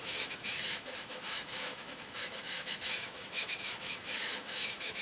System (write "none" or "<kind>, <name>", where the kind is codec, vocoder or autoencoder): autoencoder, DAC-VAE